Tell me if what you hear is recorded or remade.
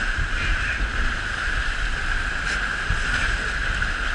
recorded